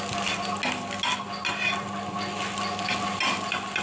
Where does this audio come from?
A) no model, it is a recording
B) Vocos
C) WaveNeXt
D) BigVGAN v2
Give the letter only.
A